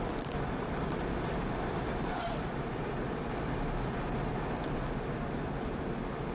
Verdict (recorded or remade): recorded